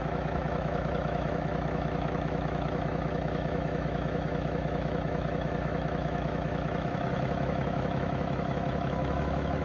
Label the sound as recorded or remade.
remade